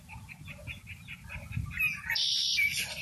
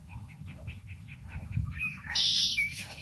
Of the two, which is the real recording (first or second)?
first